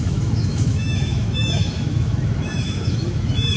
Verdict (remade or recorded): remade